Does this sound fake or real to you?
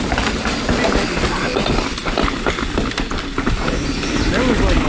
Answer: real